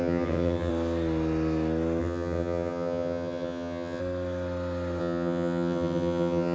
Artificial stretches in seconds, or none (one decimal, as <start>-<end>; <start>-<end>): 0.0-0.7; 2.0-4.0; 5.0-6.5